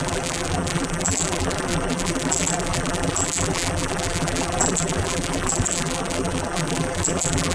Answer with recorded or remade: remade